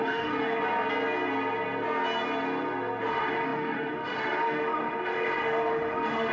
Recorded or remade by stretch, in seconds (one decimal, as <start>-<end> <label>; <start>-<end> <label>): 0.0-0.6 remade; 0.6-3.1 recorded; 3.1-6.3 remade